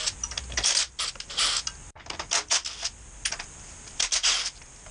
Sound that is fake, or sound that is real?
real